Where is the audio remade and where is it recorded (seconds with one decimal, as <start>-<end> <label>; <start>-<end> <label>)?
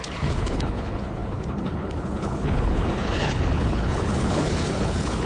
0.0-5.3 remade